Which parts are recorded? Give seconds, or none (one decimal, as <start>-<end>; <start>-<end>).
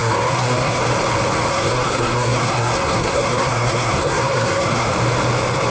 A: 0.8-1.5; 4.9-5.7